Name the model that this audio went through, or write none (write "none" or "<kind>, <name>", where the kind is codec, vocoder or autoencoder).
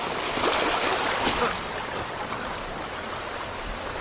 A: none